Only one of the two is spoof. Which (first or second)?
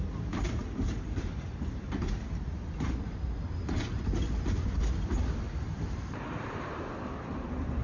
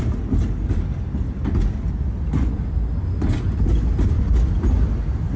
first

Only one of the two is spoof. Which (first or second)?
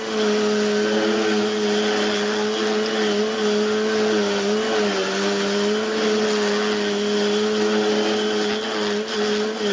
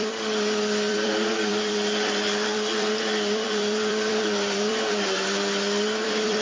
second